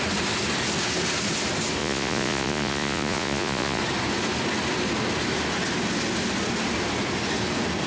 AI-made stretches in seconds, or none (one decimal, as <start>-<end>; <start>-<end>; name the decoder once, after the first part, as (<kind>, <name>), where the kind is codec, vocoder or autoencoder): 1.8-3.8 (vocoder, Vocos)